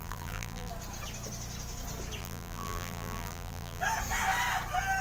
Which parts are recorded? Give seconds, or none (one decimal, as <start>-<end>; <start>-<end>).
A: 0.7-2.2; 3.8-5.0